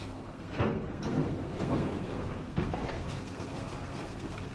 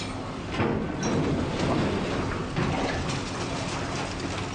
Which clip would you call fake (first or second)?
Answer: first